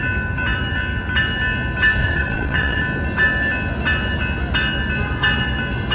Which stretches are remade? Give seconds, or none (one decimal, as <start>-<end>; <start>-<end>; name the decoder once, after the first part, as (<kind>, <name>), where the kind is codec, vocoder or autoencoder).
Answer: 2.0-2.8 (vocoder, WaveNeXt)